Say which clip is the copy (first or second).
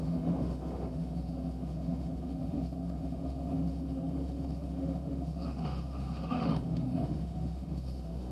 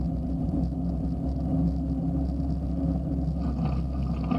first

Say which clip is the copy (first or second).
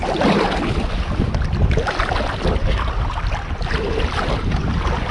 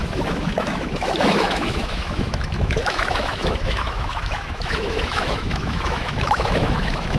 second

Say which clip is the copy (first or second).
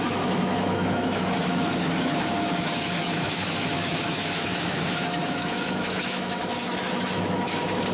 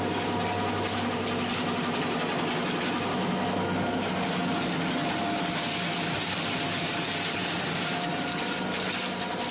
first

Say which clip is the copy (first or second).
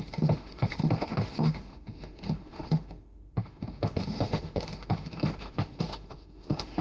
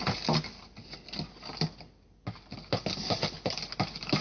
first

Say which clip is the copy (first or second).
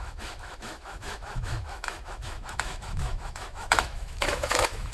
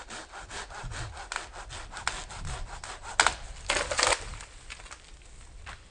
first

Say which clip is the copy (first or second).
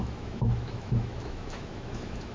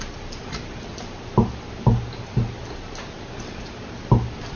first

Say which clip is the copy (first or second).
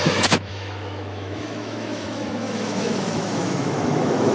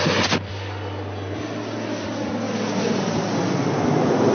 first